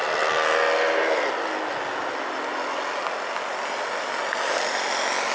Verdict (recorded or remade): recorded